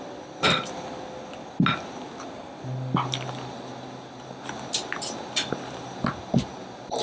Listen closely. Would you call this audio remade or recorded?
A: recorded